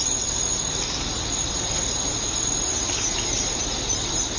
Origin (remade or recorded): recorded